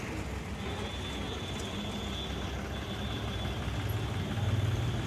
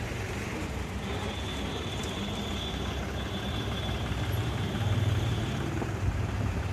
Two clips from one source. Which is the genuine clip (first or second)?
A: first